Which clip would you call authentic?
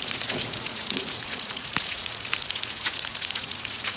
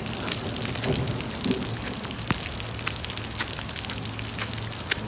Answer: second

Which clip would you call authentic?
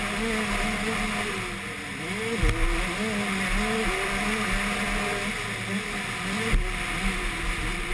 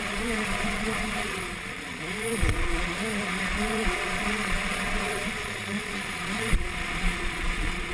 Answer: first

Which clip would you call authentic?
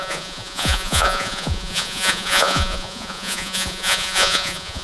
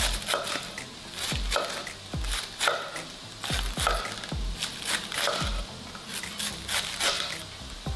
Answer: second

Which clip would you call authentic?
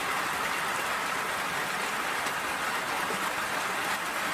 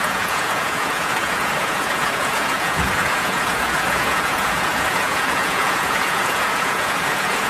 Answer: first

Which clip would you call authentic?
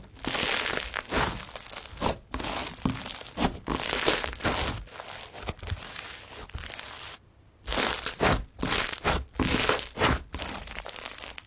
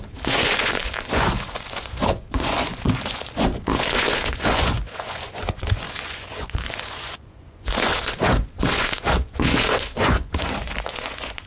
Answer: first